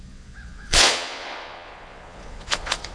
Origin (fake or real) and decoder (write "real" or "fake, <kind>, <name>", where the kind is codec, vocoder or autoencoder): fake, vocoder, Vocos